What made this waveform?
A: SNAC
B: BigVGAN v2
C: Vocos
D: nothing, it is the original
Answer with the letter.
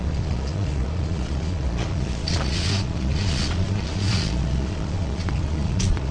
C